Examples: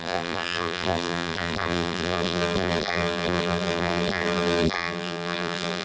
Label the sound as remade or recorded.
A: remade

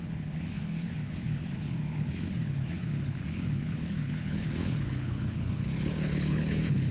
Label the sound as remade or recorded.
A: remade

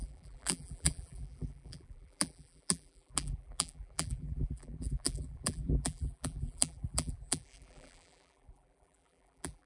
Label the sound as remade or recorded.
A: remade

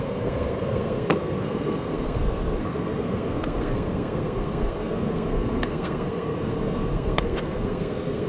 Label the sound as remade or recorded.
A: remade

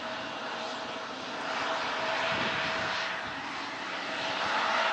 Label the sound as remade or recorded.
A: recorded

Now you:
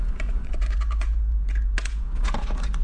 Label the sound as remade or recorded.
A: remade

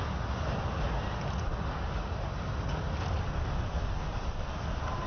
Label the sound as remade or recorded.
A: recorded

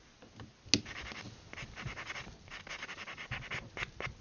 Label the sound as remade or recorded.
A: recorded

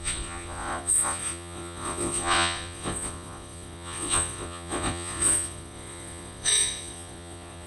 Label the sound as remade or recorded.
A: remade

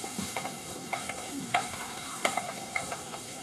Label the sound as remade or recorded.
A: remade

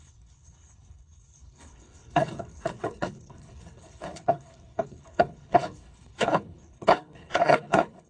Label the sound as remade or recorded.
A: remade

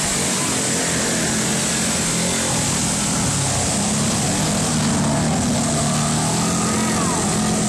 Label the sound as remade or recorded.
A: recorded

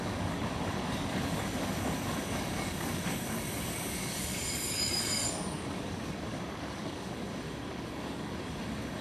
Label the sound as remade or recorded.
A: remade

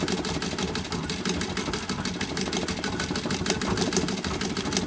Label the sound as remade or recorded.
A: recorded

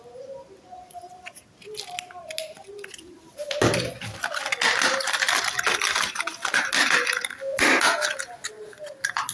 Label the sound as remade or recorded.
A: recorded